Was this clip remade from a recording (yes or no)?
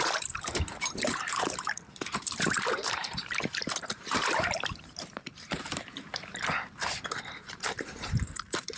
yes